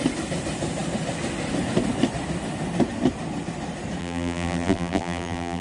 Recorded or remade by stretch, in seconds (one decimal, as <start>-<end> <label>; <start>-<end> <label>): 0.0-4.0 recorded; 4.0-5.6 remade

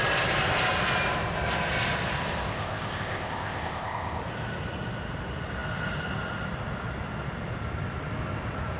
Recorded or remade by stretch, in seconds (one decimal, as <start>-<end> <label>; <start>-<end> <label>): 0.0-2.5 recorded; 2.5-4.2 remade; 4.2-8.8 recorded

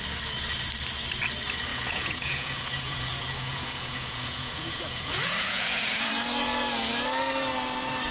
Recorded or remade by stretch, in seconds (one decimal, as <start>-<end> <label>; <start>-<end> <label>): 0.0-1.7 recorded; 1.7-6.1 remade; 6.1-8.1 recorded